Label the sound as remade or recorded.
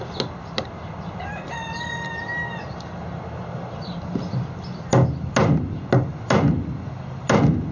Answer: recorded